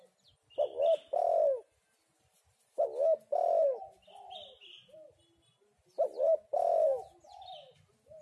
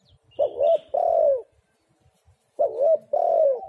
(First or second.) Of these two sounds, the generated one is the second